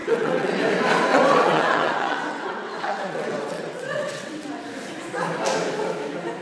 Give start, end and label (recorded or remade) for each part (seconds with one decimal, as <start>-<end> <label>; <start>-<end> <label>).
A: 0.0-0.6 remade; 0.6-1.1 recorded; 1.1-4.6 remade; 4.6-6.4 recorded